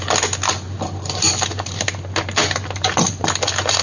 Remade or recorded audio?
recorded